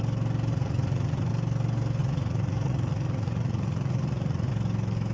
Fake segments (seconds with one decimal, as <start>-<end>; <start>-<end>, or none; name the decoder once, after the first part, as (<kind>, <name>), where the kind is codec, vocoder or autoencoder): 0.5-1.3 (vocoder, Vocos); 2.0-4.5